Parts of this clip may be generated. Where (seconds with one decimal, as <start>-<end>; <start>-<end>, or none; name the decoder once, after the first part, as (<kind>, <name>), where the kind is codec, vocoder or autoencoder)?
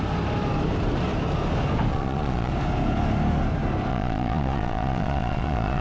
1.9-2.5 (vocoder, Vocos); 3.9-5.8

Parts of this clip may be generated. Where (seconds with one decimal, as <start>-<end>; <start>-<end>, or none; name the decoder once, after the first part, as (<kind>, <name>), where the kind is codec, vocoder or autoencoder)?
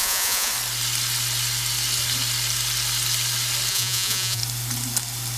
0.0-0.5 (vocoder, Vocos); 3.7-4.4